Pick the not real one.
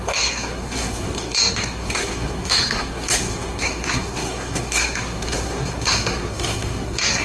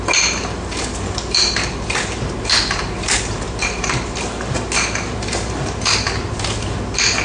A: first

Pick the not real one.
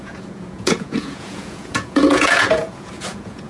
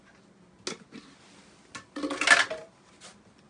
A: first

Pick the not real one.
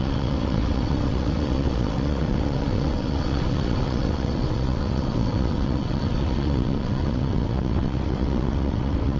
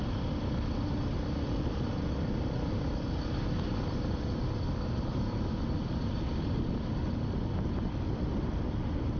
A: first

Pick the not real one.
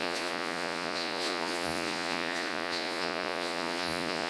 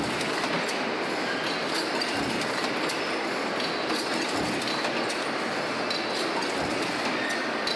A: first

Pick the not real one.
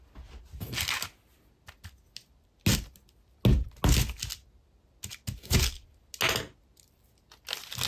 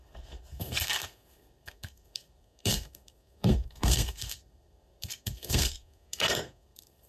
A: second